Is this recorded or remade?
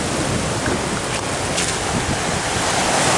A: recorded